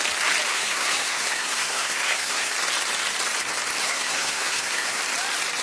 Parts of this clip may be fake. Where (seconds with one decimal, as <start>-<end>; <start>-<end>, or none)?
0.5-2.5; 3.8-5.0